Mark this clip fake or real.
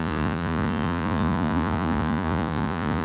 fake